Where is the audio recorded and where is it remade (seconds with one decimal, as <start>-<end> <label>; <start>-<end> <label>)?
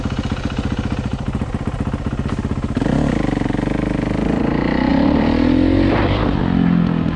0.0-1.1 recorded; 1.1-2.4 remade; 2.4-4.9 recorded; 4.9-6.4 remade; 6.4-7.2 recorded